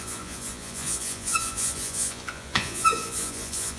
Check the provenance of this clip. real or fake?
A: fake